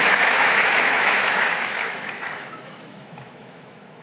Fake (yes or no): yes